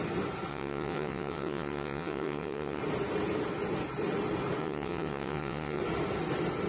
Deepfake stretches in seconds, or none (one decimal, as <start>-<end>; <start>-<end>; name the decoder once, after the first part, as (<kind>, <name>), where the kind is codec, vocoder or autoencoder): 0.5-2.8 (vocoder, WaveNeXt); 4.6-5.8